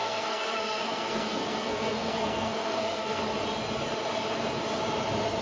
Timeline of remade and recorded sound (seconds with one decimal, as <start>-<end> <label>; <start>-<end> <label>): 0.0-3.2 remade; 3.2-5.4 recorded